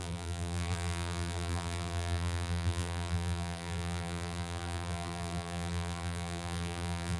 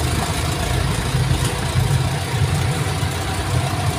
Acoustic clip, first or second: second